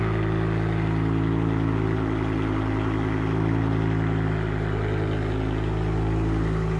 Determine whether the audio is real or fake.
real